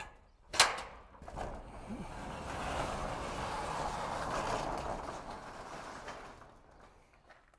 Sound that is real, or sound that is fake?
real